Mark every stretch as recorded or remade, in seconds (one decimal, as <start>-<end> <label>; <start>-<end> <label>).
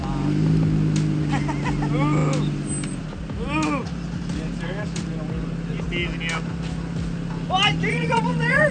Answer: 0.0-7.9 recorded; 7.9-8.7 remade